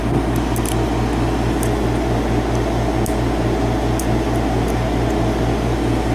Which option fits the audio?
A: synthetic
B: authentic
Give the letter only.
B